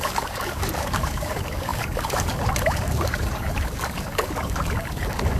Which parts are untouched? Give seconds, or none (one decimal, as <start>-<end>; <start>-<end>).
none